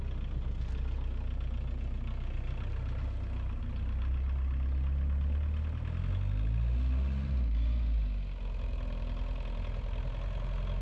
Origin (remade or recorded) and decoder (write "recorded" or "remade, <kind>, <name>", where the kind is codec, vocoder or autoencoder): recorded